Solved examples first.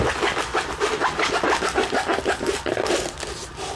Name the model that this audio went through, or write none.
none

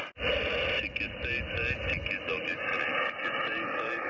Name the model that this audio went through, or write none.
none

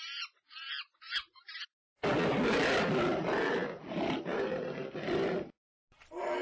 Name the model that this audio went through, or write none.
none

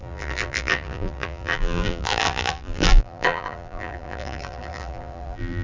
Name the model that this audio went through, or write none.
vocoder, BigVGAN v2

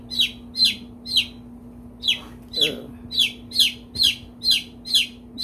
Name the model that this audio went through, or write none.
none